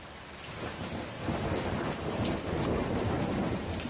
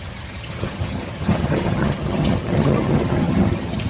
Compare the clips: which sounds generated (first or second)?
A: second